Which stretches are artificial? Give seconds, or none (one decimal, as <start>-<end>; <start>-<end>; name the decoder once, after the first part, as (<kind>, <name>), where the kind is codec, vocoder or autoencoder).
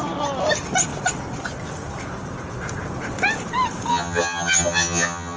3.9-5.4 (vocoder, HiFi-GAN)